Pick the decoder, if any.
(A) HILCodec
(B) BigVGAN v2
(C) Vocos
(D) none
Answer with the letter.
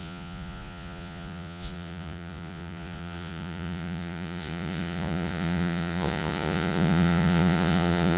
C